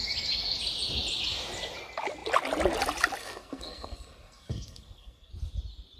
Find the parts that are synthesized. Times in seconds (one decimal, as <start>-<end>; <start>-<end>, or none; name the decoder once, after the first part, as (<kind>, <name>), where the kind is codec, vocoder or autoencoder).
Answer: 3.2-5.3 (codec, SNAC)